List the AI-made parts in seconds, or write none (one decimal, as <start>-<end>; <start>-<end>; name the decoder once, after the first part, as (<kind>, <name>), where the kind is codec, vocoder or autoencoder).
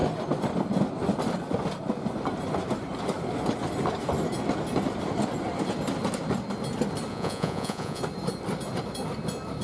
7.1-8.0 (vocoder, Vocos)